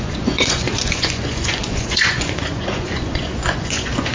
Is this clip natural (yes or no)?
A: no